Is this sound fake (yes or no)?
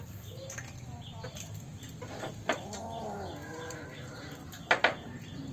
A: no